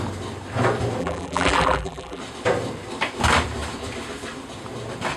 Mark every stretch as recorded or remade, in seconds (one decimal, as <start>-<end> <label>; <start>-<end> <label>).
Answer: 0.0-1.0 recorded; 1.0-2.2 remade; 2.2-5.2 recorded